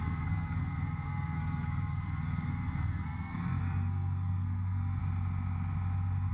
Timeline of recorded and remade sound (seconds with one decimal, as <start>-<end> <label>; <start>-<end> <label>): 0.0-5.0 remade; 5.0-6.3 recorded